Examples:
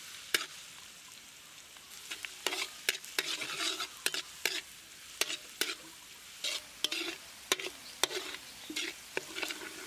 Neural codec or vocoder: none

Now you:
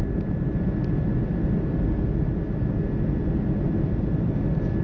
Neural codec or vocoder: none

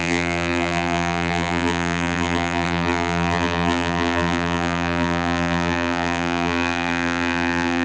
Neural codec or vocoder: vocoder, BigVGAN v2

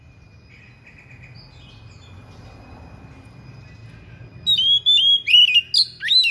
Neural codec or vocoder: none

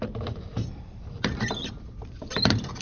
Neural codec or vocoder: vocoder, BigVGAN v2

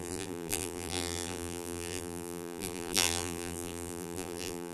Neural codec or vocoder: vocoder, BigVGAN v2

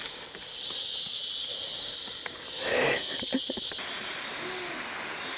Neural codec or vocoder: none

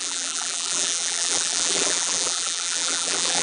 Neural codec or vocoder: vocoder, BigVGAN v2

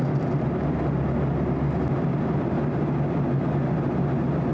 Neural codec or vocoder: none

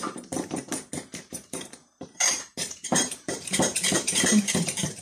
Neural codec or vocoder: vocoder, BigVGAN v2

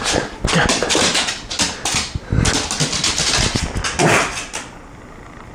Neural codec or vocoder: none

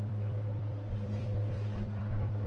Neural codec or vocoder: vocoder, BigVGAN v2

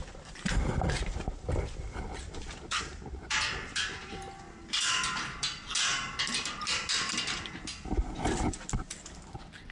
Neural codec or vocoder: vocoder, BigVGAN v2